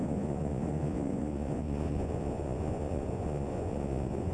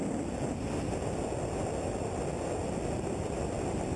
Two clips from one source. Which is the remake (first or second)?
first